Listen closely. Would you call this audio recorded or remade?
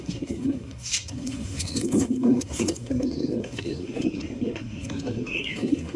remade